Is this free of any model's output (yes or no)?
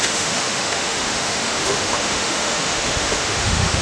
no